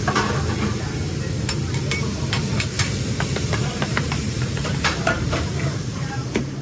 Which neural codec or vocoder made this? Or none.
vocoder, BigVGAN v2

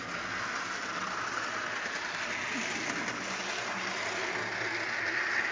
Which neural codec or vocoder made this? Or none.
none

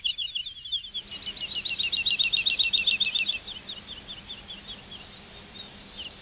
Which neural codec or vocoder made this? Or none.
none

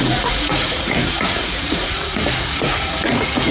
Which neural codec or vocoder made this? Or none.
vocoder, Vocos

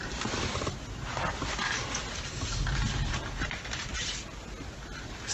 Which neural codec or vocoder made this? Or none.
none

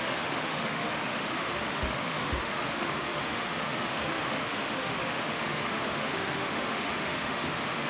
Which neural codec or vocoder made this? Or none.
autoencoder, DAC-VAE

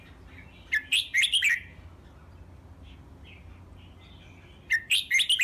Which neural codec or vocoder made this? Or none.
none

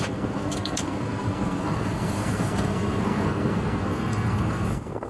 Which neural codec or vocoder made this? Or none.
codec, SNAC